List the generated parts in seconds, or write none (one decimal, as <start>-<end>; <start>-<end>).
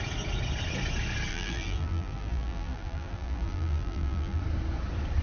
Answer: 1.3-4.4